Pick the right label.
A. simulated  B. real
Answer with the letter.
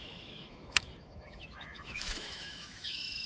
A